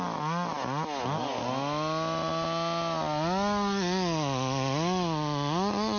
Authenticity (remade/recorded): recorded